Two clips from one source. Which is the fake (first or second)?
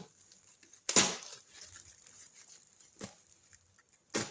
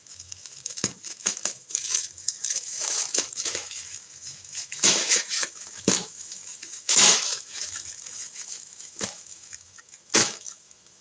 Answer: second